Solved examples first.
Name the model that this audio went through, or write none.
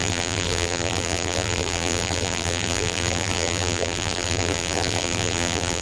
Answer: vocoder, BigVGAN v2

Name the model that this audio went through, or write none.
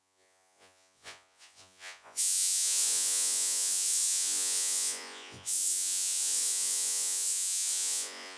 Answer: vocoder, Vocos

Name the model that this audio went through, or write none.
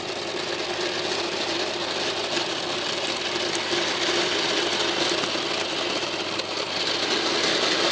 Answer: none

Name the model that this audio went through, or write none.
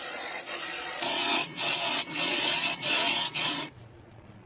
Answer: vocoder, Vocos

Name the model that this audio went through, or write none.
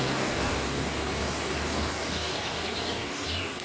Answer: codec, DAC